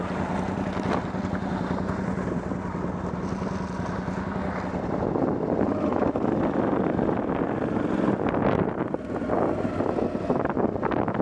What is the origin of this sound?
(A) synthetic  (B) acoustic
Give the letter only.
B